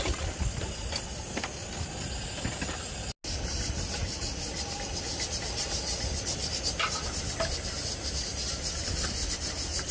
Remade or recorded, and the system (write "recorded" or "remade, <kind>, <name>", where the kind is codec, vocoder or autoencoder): recorded